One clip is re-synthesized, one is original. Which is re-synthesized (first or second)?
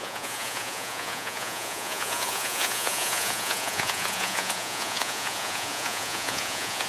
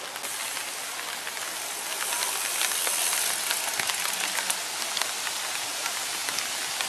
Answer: first